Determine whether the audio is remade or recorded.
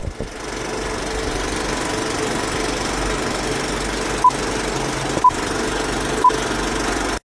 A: recorded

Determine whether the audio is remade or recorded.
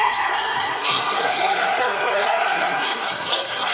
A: remade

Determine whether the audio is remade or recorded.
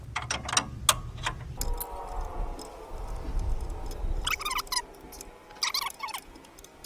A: recorded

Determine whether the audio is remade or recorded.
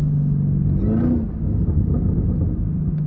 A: recorded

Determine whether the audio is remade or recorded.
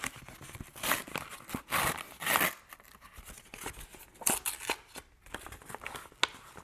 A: recorded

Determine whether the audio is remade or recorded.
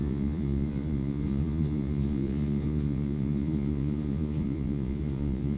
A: remade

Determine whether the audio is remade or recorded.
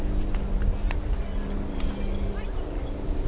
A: recorded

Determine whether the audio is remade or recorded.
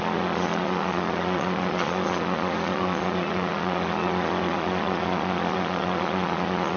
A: remade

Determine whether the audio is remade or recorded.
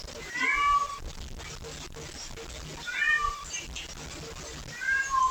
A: recorded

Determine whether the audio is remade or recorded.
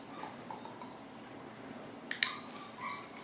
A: recorded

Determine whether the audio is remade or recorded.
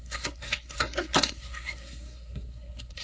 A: remade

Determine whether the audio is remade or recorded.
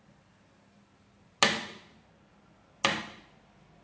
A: recorded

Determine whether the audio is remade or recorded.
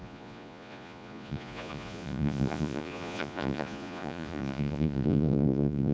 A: remade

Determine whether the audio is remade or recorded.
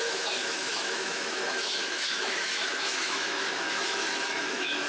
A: remade